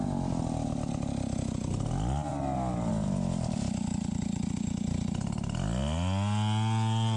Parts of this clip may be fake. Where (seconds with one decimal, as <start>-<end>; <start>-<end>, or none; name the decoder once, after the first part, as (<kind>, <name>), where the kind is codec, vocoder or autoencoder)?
none